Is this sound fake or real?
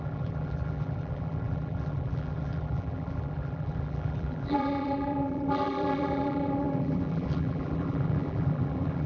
fake